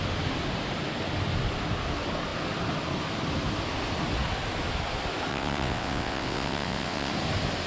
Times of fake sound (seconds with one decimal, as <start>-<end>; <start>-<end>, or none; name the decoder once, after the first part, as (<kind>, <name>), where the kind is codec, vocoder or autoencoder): 5.3-7.1 (vocoder, WaveNeXt)